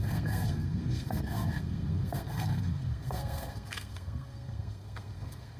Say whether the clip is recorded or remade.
remade